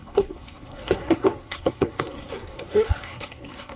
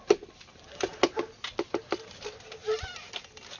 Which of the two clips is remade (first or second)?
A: first